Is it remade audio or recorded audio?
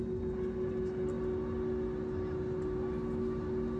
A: recorded